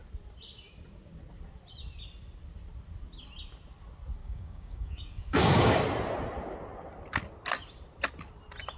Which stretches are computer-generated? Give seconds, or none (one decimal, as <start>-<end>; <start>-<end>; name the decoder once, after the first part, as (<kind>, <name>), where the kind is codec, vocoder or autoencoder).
4.2-5.8 (codec, DAC)